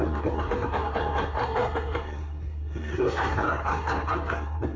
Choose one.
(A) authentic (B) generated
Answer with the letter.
B